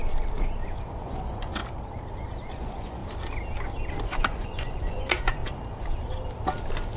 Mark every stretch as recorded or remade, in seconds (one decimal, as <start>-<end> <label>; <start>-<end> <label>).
0.0-1.0 recorded; 1.0-1.6 remade; 1.6-2.5 recorded; 2.5-3.0 remade; 3.0-4.0 recorded; 4.0-5.4 remade; 5.4-7.0 recorded